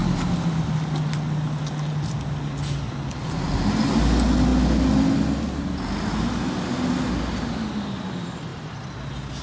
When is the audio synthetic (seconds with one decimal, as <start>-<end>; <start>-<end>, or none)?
none